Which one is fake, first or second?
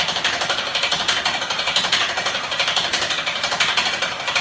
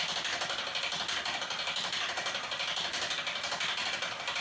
first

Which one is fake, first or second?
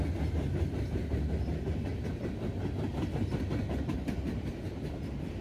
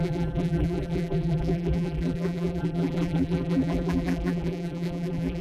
second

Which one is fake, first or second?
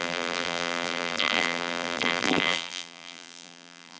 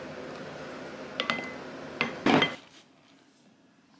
first